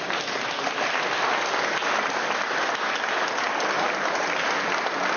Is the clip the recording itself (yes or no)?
yes